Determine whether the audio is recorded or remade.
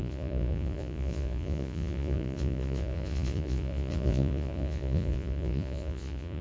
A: remade